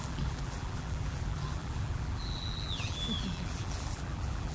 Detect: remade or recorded remade